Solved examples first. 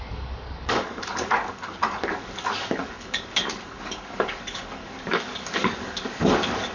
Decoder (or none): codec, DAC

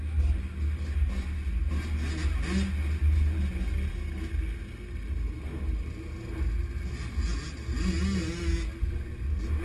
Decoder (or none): none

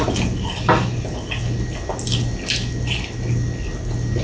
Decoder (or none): none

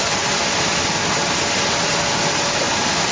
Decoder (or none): none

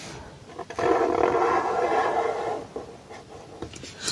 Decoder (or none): none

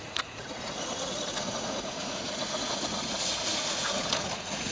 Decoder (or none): vocoder, Vocos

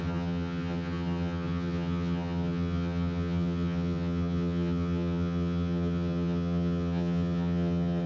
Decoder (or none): vocoder, HiFi-GAN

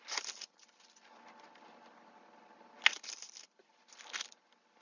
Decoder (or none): none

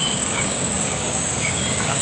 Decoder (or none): codec, DAC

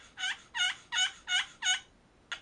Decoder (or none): none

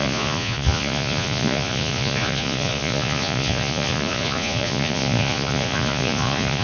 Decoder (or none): vocoder, Vocos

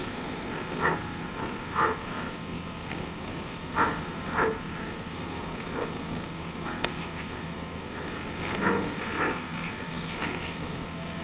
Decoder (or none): codec, SNAC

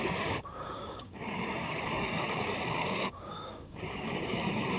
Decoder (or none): codec, DAC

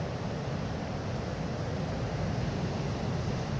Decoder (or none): none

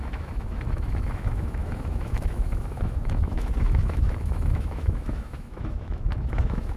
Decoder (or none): autoencoder, DAC-VAE